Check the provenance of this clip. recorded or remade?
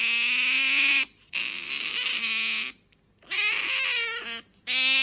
recorded